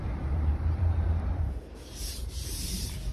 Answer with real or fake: fake